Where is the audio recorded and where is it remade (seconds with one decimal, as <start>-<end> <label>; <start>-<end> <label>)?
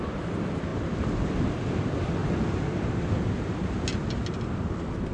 0.0-5.1 recorded